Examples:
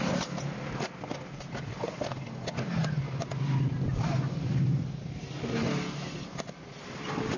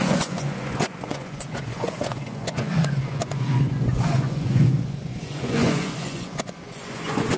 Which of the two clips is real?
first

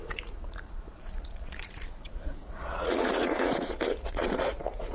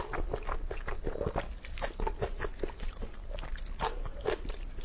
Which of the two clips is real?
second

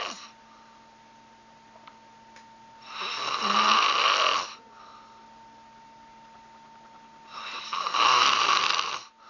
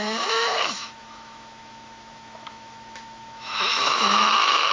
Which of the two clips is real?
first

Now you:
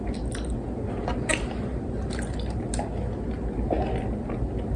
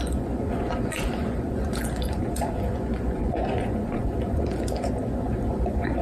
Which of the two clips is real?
first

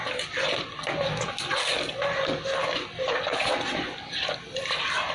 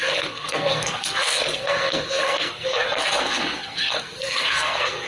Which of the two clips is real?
first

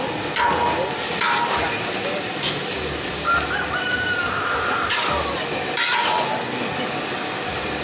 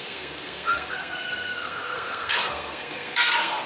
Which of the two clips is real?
first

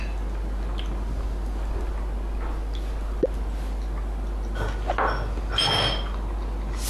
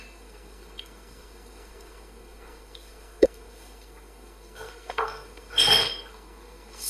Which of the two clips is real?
first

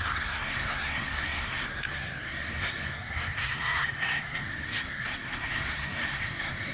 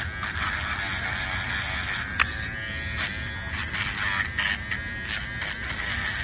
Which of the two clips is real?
second